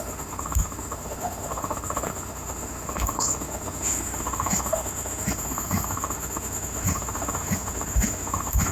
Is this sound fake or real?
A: fake